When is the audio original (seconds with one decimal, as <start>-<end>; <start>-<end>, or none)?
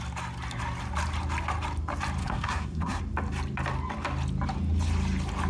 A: 0.0-2.2; 3.0-5.5